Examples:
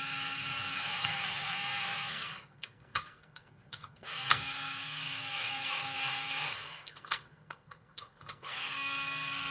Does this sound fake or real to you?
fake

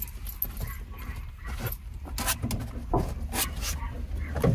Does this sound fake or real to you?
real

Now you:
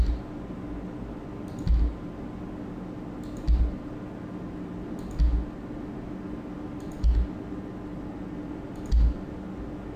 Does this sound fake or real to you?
real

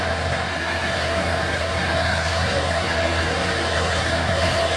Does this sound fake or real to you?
fake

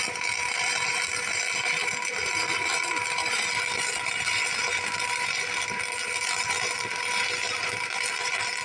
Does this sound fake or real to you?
real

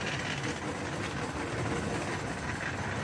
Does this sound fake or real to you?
real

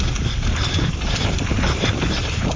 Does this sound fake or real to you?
real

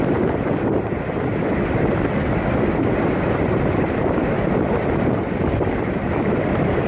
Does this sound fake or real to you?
real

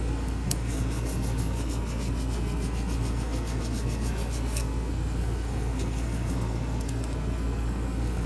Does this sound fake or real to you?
fake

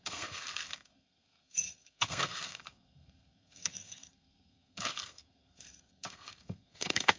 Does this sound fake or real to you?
fake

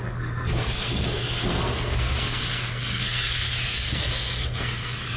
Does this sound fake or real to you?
fake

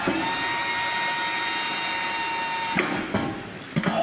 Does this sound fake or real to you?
real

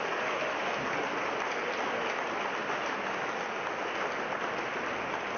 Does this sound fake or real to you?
real